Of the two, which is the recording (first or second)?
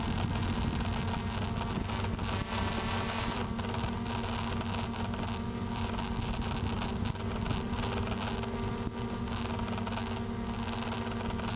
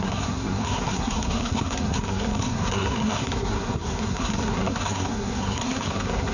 first